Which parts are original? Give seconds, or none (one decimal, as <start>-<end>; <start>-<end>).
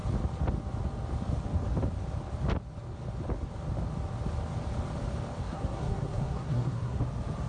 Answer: 0.0-5.4; 7.0-7.5